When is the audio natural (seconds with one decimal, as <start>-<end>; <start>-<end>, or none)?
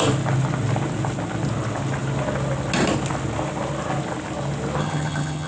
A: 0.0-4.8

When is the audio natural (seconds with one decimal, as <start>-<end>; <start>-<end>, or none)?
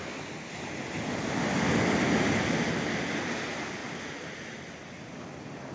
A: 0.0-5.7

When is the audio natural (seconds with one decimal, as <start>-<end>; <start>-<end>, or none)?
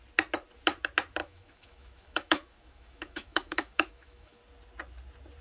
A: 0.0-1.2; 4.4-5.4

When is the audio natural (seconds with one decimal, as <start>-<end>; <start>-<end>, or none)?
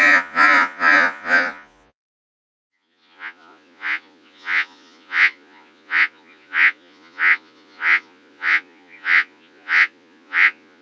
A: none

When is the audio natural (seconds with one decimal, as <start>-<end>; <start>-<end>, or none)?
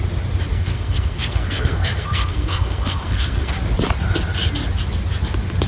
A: 0.0-0.5; 3.5-5.7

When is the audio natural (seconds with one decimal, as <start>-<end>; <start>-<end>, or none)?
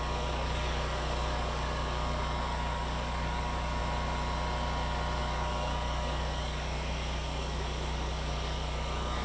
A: 3.8-5.2